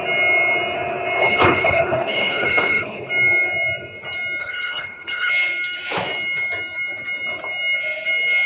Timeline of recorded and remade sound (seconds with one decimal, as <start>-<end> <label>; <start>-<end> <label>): 0.0-1.2 recorded; 1.2-3.1 remade; 3.1-4.4 recorded; 4.4-5.3 remade; 5.3-8.5 recorded